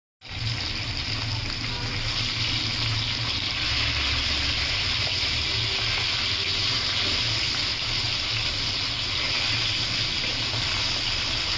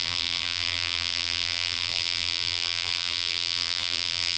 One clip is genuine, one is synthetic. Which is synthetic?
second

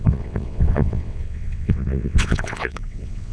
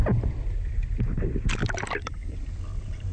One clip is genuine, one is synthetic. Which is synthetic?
first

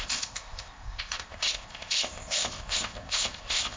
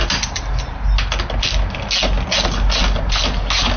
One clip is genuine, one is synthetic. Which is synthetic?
first